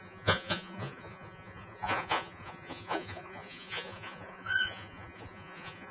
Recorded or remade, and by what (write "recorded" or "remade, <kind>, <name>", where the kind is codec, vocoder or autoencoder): remade, vocoder, Vocos